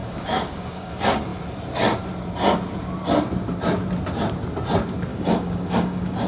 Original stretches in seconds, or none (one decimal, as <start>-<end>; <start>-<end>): 0.9-5.1